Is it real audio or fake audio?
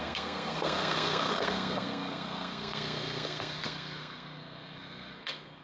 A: fake